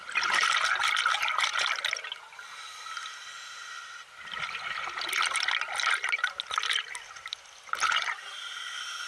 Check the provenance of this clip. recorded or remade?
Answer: recorded